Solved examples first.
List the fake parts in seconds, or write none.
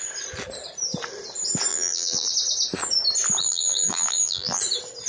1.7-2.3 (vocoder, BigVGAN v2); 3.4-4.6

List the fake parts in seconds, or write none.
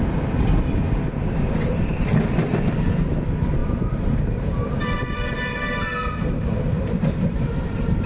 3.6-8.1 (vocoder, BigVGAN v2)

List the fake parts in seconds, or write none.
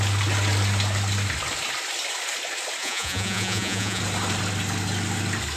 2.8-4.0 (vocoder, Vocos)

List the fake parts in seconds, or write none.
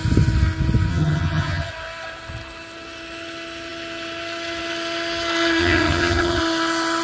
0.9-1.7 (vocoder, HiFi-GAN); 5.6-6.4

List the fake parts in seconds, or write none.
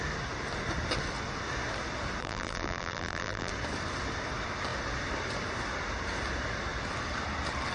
2.2-3.5 (vocoder, BigVGAN v2)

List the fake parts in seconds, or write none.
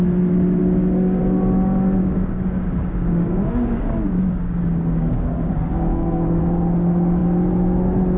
0.6-1.2 (codec, DAC); 2.0-6.4